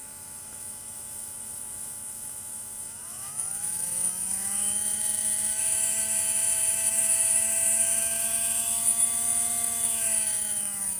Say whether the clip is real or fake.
fake